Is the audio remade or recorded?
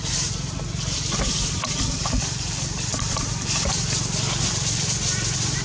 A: remade